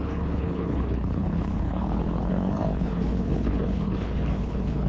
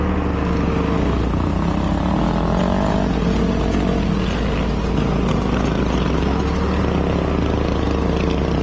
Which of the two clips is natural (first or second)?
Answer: second